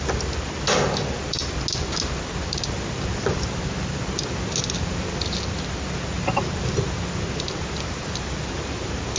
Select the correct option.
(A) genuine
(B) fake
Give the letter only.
A